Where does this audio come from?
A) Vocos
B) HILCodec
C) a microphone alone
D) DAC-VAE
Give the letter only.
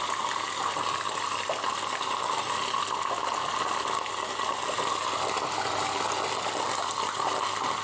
C